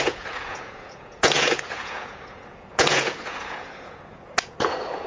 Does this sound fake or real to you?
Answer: fake